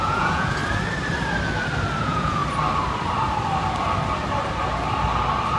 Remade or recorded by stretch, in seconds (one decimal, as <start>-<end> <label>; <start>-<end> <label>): 0.0-0.6 remade; 0.6-2.0 recorded; 2.0-2.4 remade; 2.4-5.6 recorded